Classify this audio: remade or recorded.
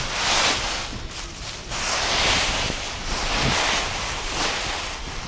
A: recorded